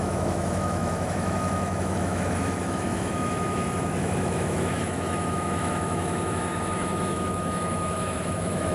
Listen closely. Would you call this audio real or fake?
fake